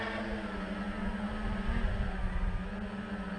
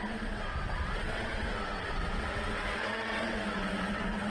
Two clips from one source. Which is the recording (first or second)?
first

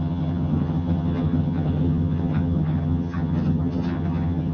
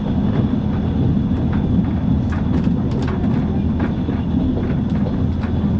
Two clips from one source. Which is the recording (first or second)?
second